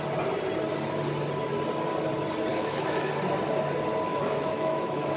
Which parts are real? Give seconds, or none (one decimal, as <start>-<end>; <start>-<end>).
0.0-2.5; 3.1-4.1